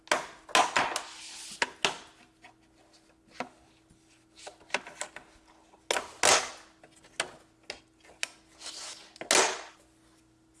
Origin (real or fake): real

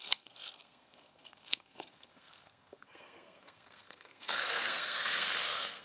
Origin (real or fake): fake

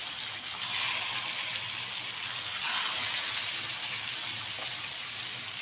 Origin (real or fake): real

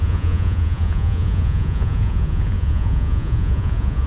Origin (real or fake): fake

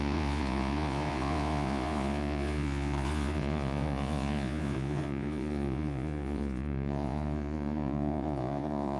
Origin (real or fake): fake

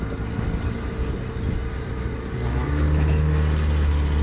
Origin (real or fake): real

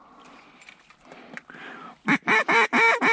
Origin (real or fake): real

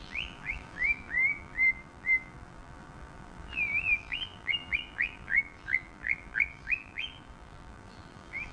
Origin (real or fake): fake